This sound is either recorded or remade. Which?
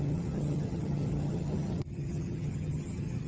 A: remade